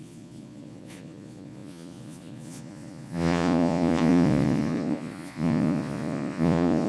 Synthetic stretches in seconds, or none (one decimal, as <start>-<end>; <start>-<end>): 0.0-6.9